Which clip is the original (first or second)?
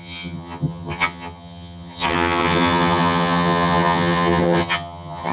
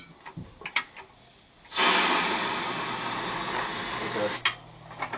second